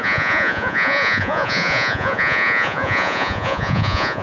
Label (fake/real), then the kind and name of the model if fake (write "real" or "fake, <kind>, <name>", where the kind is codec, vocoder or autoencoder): fake, vocoder, Vocos